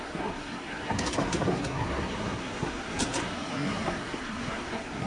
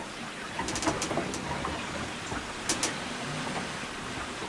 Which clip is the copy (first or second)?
first